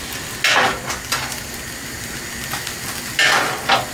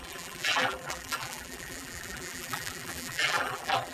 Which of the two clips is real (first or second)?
first